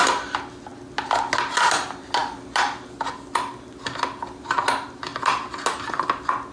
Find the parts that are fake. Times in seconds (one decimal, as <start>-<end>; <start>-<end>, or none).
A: none